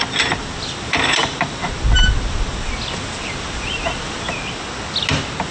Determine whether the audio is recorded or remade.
recorded